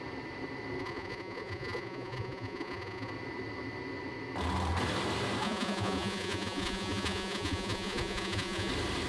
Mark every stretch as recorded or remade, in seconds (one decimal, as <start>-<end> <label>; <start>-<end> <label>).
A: 0.0-0.8 recorded; 0.8-3.1 remade; 3.1-5.4 recorded; 5.4-8.7 remade; 8.7-9.1 recorded